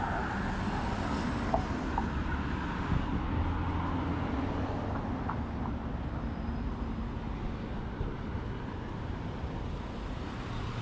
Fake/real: real